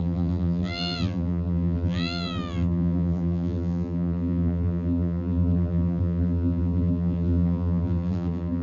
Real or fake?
fake